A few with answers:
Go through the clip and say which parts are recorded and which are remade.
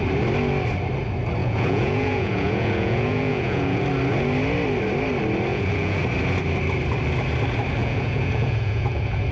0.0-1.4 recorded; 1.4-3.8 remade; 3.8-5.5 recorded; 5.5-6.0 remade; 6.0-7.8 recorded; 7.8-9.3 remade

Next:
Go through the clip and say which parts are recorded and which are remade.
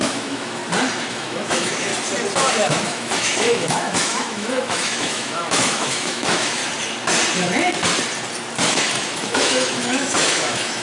0.0-0.6 remade; 0.6-1.1 recorded; 1.1-1.9 remade; 1.9-2.5 recorded; 2.5-6.6 remade; 6.6-8.7 recorded; 8.7-10.8 remade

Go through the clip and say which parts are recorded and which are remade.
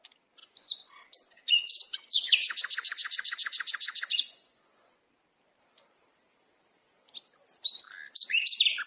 0.0-0.4 recorded; 0.4-5.0 remade; 5.0-8.9 recorded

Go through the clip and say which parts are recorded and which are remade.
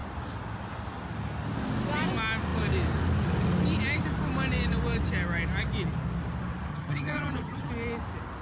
0.0-6.7 recorded; 6.7-7.7 remade; 7.7-8.4 recorded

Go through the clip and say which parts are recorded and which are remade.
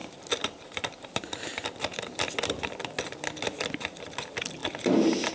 0.0-5.3 recorded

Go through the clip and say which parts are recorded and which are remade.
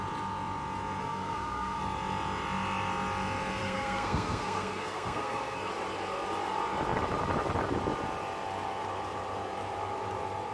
0.0-1.0 recorded; 1.0-1.8 remade; 1.8-3.6 recorded; 3.6-5.7 remade; 5.7-10.5 recorded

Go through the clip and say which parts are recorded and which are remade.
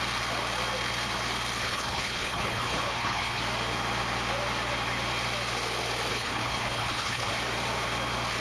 0.0-1.6 recorded; 1.6-3.4 remade; 3.4-6.1 recorded; 6.1-7.3 remade; 7.3-8.4 recorded